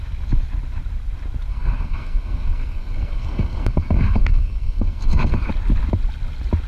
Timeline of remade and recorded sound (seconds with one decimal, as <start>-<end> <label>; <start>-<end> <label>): 0.0-1.5 recorded; 1.5-5.5 remade; 5.5-6.7 recorded